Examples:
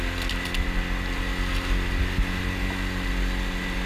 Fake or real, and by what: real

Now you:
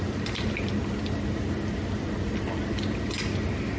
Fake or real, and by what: real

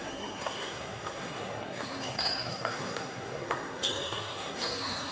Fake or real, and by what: fake, codec, SNAC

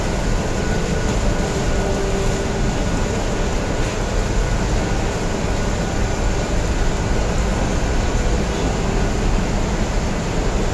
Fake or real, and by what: real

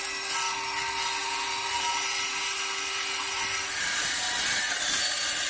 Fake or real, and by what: real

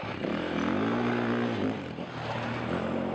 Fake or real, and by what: real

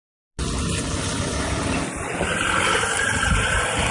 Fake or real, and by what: real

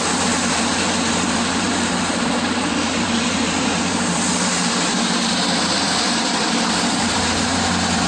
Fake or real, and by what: fake, vocoder, BigVGAN v2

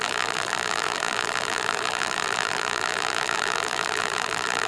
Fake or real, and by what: fake, vocoder, BigVGAN v2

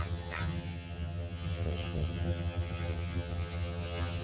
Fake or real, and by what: fake, vocoder, HiFi-GAN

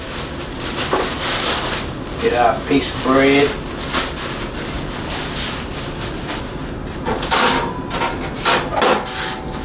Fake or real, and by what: real